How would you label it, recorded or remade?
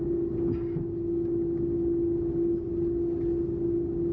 recorded